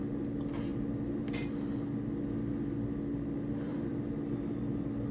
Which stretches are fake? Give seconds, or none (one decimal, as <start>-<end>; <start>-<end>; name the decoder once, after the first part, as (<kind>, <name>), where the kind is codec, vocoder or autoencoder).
3.7-4.2 (vocoder, BigVGAN v2)

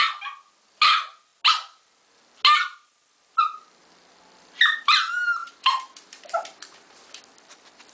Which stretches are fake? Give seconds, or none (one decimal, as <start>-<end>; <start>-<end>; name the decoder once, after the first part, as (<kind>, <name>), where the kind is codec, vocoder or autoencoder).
5.4-7.2 (vocoder, BigVGAN v2)